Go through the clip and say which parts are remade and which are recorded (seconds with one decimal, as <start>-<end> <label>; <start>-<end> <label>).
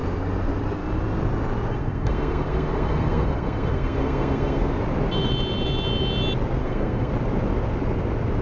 0.0-1.7 recorded; 1.7-4.7 remade; 4.7-6.6 recorded; 6.6-7.1 remade; 7.1-8.4 recorded